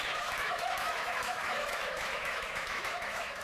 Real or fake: fake